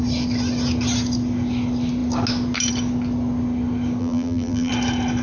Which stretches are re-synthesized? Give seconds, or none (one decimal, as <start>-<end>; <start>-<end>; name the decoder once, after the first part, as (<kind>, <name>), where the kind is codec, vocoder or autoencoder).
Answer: 4.0-4.7 (vocoder, BigVGAN v2)